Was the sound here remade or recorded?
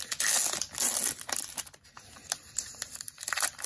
recorded